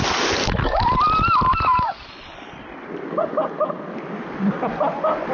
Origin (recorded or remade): recorded